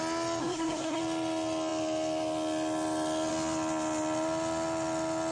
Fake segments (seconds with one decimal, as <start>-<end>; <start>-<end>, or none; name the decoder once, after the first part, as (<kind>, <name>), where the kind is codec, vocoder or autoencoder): 0.4-1.0 (codec, SNAC)